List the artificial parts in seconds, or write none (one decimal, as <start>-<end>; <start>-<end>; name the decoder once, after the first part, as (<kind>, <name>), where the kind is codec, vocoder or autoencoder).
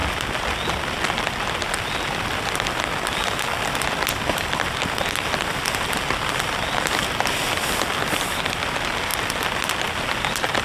none